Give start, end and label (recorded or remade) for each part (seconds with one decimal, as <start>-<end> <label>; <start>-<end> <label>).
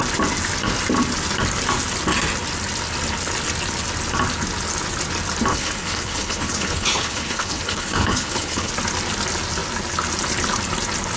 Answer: 0.0-5.5 recorded; 5.5-8.7 remade; 8.7-11.2 recorded